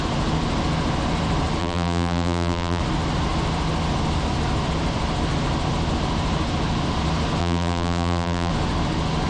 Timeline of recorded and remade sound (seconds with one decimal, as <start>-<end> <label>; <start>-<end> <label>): 0.0-1.6 recorded; 1.6-2.8 remade; 2.8-7.4 recorded; 7.4-8.5 remade; 8.5-9.3 recorded